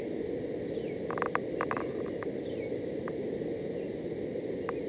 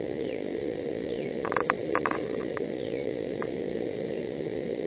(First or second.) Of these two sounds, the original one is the first